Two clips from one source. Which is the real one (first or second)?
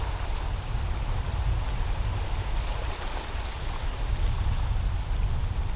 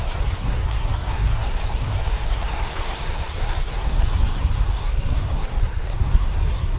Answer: first